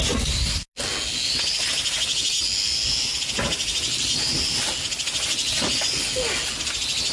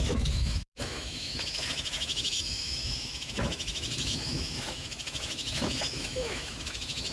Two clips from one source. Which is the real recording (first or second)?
first